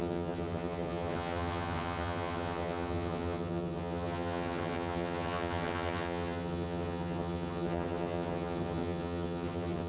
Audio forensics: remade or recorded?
remade